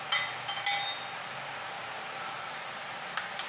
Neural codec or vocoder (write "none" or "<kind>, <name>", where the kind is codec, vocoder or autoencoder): none